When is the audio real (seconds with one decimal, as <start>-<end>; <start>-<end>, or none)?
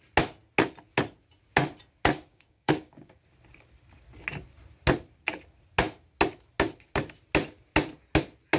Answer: 0.0-2.3; 3.2-8.6